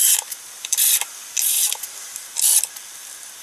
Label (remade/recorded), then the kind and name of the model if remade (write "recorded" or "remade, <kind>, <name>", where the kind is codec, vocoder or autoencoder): recorded